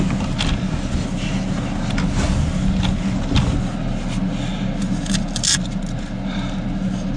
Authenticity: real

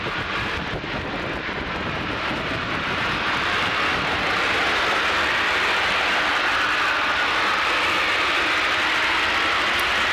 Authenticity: real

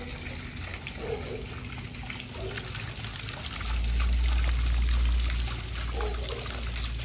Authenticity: real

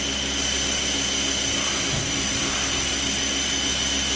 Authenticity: real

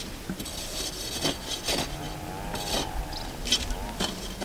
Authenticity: real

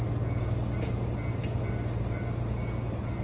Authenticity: real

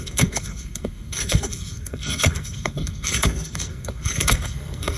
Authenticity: fake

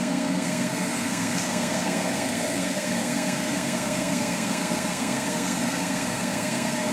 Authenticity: fake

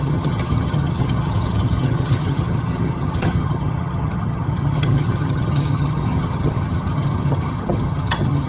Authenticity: fake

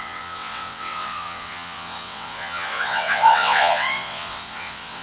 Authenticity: fake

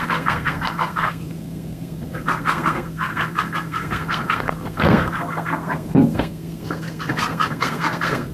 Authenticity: fake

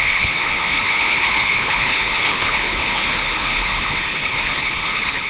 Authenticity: fake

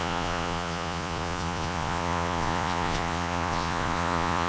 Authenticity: fake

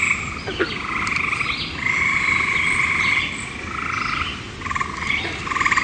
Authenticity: real